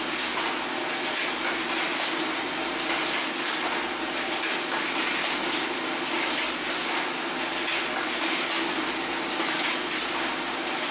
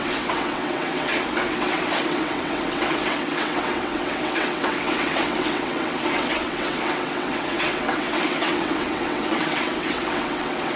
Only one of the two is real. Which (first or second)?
first